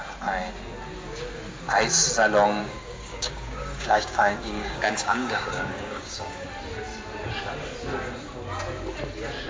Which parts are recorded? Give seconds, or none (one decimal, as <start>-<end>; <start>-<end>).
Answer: 0.0-2.6; 6.5-9.5